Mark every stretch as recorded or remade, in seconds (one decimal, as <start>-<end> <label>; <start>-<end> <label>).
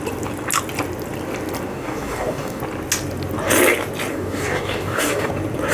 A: 0.0-1.7 recorded; 1.7-2.6 remade; 2.6-4.1 recorded; 4.1-5.3 remade; 5.3-5.7 recorded